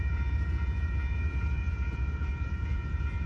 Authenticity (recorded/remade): remade